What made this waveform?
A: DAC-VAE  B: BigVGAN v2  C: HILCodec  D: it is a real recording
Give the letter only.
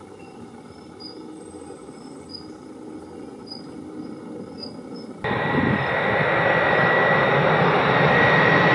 D